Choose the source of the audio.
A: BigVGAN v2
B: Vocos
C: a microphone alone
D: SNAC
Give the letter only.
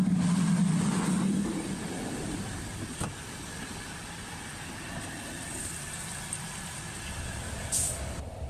C